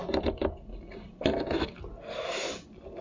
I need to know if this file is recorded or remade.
recorded